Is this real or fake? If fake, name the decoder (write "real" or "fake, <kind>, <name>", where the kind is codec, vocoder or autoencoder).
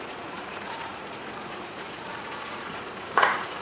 fake, vocoder, Vocos